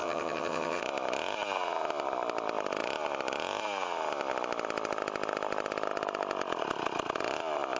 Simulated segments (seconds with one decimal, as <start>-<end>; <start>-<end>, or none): 0.0-0.8